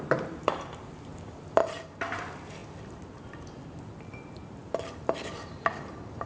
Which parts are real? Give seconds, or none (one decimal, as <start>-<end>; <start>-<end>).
1.6-2.1; 4.6-5.3